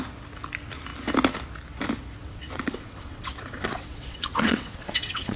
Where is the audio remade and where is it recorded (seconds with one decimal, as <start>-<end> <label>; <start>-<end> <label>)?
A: 0.0-2.2 recorded; 2.2-5.4 remade